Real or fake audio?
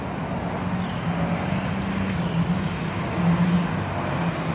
real